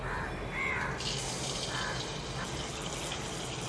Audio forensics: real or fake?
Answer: real